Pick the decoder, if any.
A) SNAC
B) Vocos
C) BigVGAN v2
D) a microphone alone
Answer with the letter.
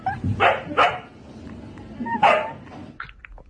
D